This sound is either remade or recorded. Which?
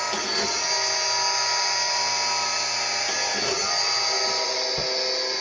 recorded